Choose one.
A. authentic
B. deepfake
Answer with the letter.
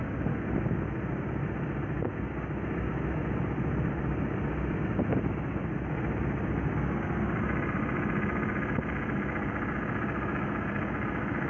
A